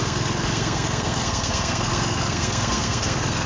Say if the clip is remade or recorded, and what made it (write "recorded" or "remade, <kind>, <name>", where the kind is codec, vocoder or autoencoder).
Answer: remade, codec, SNAC